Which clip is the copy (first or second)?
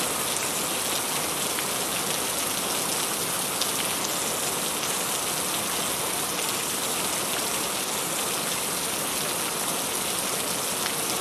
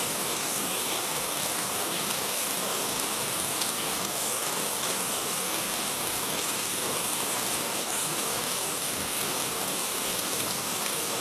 second